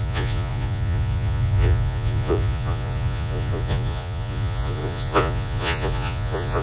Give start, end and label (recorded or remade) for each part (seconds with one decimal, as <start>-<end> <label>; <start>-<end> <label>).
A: 0.0-6.6 remade